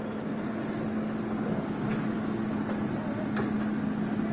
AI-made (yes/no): no